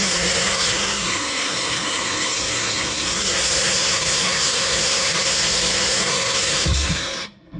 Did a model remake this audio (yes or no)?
yes